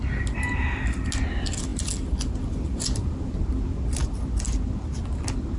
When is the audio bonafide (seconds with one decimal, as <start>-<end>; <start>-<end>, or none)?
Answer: 0.0-5.6